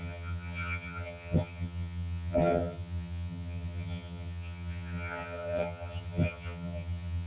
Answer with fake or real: fake